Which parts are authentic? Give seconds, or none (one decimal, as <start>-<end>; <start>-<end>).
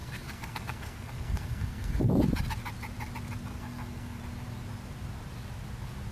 2.1-3.5; 4.2-6.1